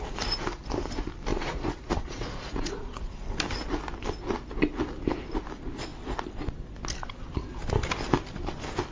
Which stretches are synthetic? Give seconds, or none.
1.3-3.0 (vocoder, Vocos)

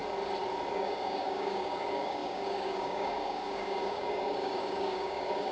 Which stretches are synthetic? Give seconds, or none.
0.7-5.5 (codec, DAC)